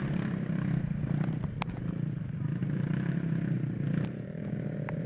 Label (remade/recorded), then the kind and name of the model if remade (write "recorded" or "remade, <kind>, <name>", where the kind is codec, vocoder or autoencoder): recorded